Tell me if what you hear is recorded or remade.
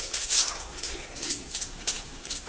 remade